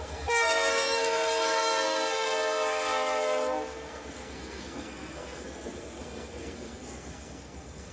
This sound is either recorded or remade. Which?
remade